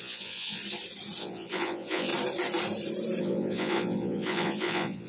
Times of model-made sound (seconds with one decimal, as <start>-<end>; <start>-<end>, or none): 0.0-0.6; 1.2-2.1; 3.2-5.1